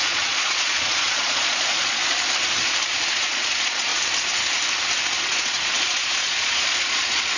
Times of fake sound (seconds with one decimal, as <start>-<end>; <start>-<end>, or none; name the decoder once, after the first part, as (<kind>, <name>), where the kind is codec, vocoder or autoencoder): 0.0-2.0 (vocoder, Vocos); 3.1-3.9; 5.2-7.4

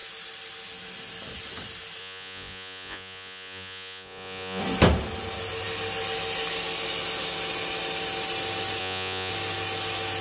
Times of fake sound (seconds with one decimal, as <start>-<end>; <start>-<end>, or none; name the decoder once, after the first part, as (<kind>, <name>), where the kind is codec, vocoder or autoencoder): 2.0-4.6 (vocoder, Vocos); 8.8-9.3